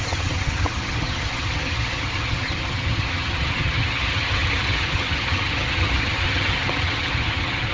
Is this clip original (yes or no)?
no